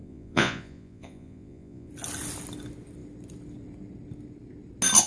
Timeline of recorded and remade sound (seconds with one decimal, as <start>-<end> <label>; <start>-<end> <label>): 0.0-1.9 remade; 1.9-5.1 recorded